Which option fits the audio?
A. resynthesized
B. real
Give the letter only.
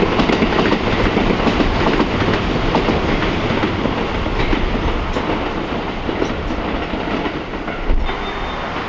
B